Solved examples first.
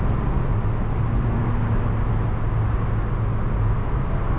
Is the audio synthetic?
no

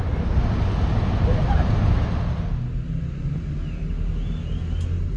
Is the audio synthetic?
no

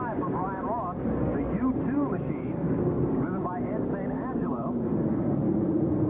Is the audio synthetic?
yes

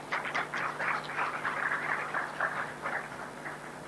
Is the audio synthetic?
no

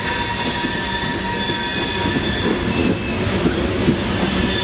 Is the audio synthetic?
no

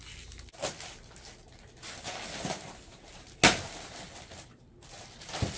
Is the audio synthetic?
no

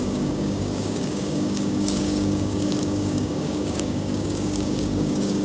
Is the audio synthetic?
yes